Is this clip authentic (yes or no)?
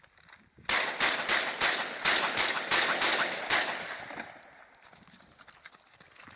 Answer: yes